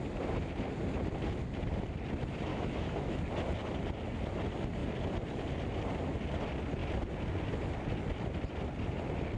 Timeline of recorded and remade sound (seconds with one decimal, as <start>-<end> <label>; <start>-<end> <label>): 0.0-2.5 recorded; 2.5-3.2 remade; 3.2-9.4 recorded